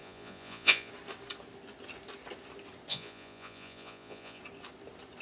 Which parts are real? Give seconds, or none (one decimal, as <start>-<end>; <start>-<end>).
0.9-2.9; 4.4-5.2